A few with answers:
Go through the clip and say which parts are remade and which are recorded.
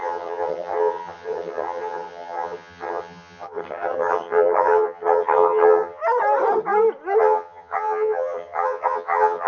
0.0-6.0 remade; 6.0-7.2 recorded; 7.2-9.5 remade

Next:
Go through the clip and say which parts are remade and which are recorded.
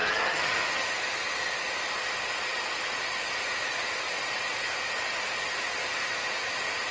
0.0-0.9 remade; 0.9-6.9 recorded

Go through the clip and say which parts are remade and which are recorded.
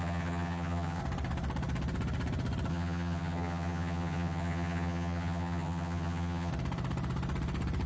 0.0-1.0 remade; 1.0-2.7 recorded; 2.7-6.5 remade; 6.5-7.9 recorded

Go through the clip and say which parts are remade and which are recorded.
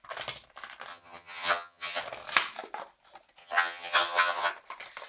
0.0-0.9 recorded; 0.9-2.0 remade; 2.0-3.4 recorded; 3.4-4.5 remade; 4.5-5.1 recorded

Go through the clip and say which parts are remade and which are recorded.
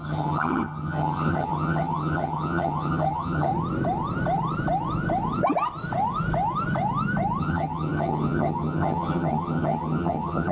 0.0-3.5 remade; 3.5-7.4 recorded; 7.4-10.5 remade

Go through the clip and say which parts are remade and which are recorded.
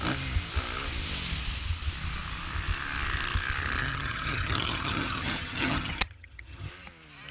0.0-3.8 recorded; 3.8-6.7 remade; 6.7-7.3 recorded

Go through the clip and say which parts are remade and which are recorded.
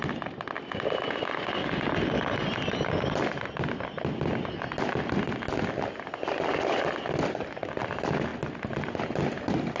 0.0-9.8 recorded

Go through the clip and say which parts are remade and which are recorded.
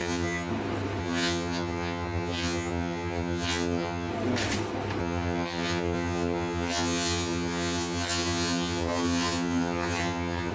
0.0-0.5 remade; 0.5-1.0 recorded; 1.0-4.1 remade; 4.1-5.0 recorded; 5.0-10.5 remade